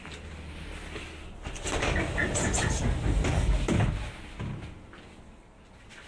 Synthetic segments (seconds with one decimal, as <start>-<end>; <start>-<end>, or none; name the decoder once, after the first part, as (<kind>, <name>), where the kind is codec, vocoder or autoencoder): none